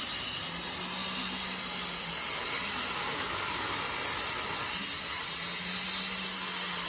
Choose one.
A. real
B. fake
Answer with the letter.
A